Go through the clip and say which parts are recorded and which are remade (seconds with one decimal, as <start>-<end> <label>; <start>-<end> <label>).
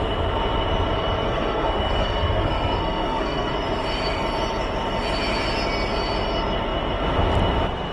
0.0-1.2 recorded; 1.2-3.5 remade; 3.5-7.9 recorded